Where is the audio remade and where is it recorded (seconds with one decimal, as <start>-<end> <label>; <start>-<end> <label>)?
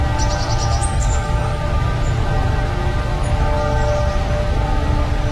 0.0-0.9 recorded; 0.9-1.6 remade; 1.6-5.3 recorded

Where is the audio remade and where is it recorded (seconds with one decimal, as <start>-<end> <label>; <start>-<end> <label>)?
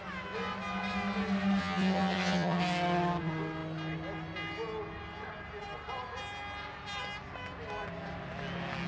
0.0-1.6 recorded; 1.6-2.6 remade; 2.6-8.9 recorded